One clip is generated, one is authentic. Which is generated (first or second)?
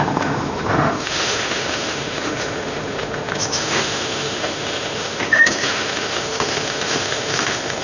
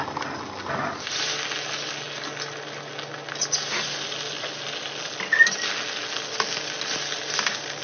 first